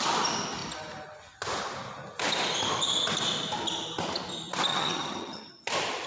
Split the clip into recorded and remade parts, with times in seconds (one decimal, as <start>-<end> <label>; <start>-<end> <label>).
0.0-4.7 recorded; 4.7-5.5 remade; 5.5-6.1 recorded